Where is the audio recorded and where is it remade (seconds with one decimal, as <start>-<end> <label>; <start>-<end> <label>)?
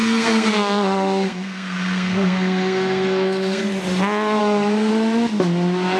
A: 0.0-3.6 remade; 3.6-4.4 recorded; 4.4-4.9 remade; 4.9-6.0 recorded